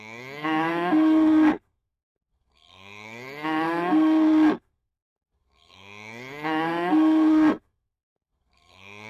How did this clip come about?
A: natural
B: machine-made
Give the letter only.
B